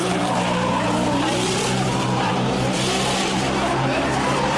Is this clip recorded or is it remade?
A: remade